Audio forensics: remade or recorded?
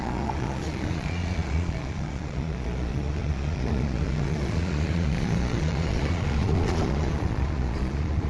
remade